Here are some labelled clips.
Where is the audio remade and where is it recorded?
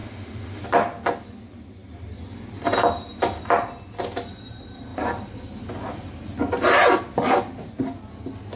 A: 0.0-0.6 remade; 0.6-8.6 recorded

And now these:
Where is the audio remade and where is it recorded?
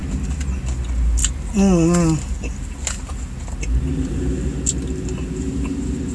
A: 0.0-6.1 recorded